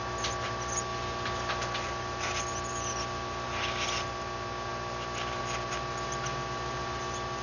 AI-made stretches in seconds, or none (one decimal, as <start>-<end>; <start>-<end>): none